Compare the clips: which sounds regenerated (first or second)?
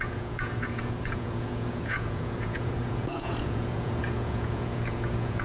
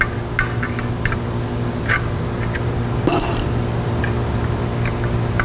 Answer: first